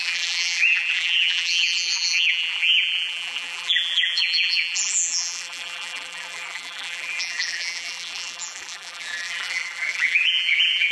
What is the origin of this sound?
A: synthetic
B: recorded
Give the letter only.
A